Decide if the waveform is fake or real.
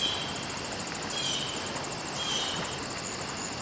real